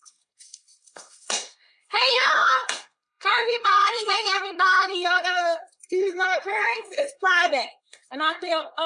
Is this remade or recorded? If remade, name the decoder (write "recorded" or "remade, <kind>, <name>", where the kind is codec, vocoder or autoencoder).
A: remade, codec, SNAC